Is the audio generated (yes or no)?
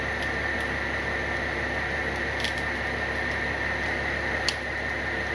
no